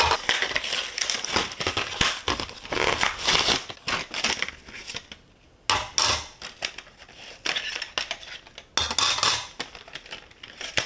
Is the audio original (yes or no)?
yes